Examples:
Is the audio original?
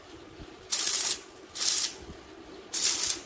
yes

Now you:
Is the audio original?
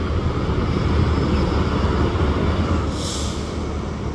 yes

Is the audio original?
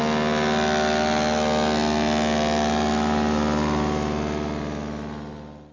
yes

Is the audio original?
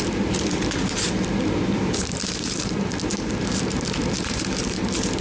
no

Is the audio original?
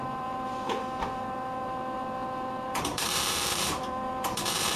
no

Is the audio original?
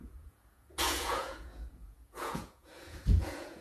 no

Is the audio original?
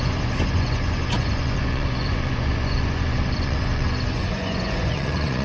no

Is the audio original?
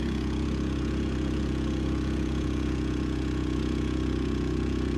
no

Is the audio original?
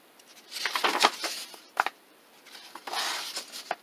yes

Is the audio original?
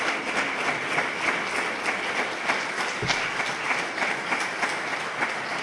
yes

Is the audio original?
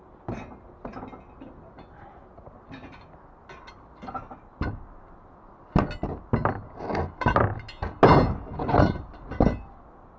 yes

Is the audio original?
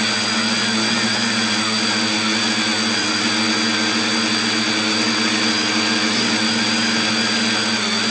yes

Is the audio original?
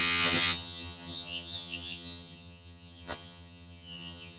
no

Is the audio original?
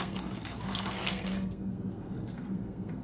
no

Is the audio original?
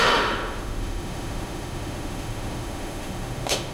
no